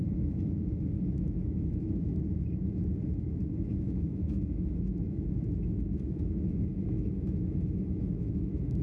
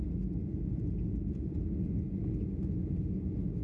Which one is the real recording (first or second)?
second